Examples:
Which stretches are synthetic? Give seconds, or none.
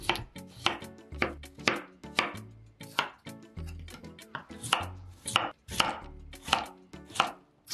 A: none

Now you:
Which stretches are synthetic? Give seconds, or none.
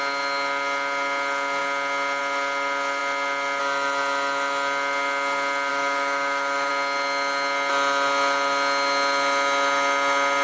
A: 5.7-6.7 (autoencoder, DAC-VAE)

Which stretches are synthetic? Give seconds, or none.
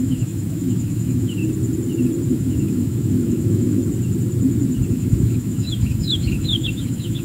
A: 0.0-1.4 (autoencoder, DAC-VAE); 2.3-3.8; 4.9-7.2